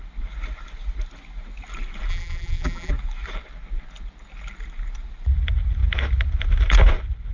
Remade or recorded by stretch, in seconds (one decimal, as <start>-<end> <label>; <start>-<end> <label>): 0.0-2.1 recorded; 2.1-2.9 remade; 2.9-7.3 recorded